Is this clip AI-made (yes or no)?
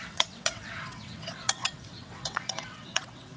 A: yes